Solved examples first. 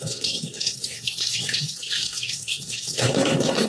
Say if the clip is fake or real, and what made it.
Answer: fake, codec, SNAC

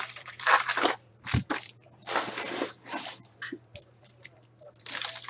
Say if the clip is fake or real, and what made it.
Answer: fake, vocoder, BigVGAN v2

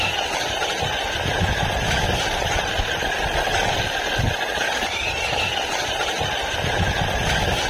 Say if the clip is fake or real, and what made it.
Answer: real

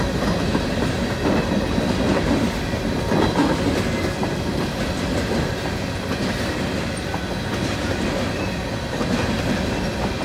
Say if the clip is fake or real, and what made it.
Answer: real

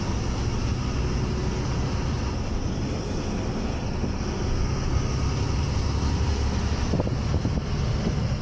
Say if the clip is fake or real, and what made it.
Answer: real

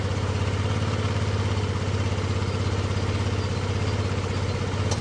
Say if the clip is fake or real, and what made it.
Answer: real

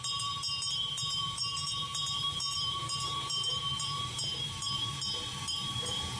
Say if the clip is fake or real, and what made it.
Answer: fake, vocoder, BigVGAN v2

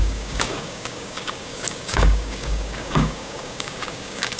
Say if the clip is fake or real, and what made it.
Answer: fake, codec, DAC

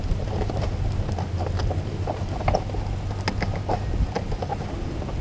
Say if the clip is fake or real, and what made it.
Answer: real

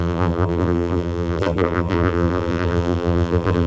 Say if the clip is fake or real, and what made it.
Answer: fake, vocoder, BigVGAN v2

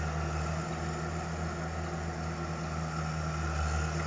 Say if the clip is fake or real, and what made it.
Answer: real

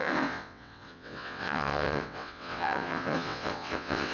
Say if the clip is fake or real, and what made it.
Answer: fake, vocoder, WaveNeXt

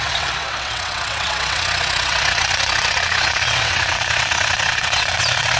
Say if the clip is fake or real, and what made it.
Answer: fake, vocoder, WaveNeXt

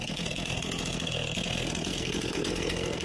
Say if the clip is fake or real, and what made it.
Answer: fake, codec, SNAC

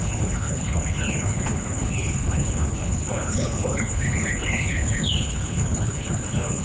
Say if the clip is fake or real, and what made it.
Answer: fake, codec, HILCodec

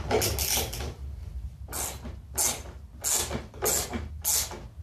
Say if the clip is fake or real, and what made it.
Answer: real